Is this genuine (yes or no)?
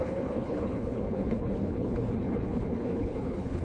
no